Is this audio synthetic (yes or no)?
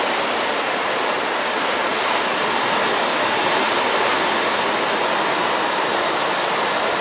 no